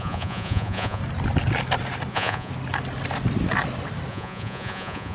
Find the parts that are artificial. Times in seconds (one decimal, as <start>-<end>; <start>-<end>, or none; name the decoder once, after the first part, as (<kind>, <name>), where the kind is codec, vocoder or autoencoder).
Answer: 0.0-1.0 (vocoder, Vocos); 2.1-2.5; 4.1-5.1